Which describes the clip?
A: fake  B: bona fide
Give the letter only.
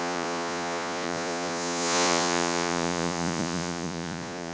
A